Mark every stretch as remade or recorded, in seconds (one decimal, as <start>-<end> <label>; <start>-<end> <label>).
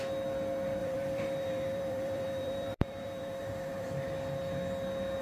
0.0-0.8 recorded; 0.8-3.9 remade; 3.9-5.2 recorded